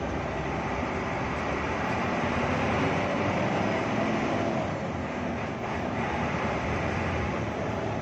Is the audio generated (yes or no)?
yes